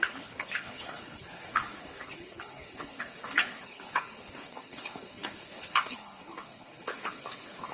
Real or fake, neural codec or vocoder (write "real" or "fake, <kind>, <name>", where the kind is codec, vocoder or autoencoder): fake, codec, HILCodec